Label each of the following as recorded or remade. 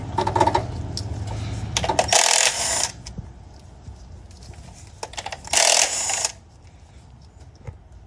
recorded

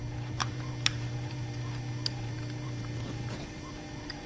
remade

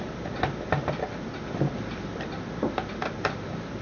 recorded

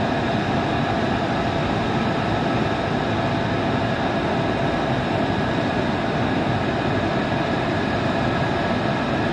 recorded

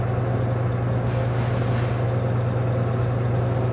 recorded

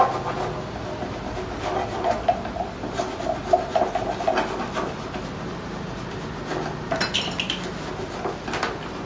recorded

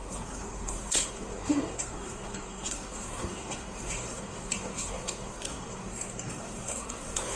remade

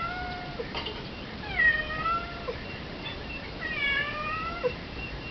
remade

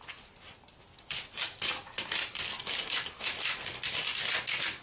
recorded